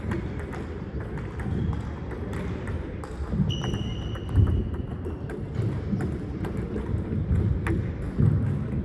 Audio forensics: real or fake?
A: real